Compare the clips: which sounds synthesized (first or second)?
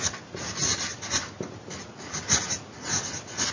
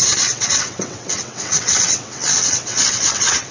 second